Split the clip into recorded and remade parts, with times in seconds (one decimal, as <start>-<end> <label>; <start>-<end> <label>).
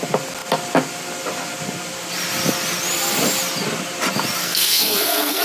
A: 0.0-4.4 recorded; 4.4-5.4 remade